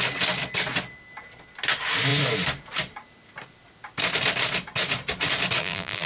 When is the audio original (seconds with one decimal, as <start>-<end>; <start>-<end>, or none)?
0.0-5.6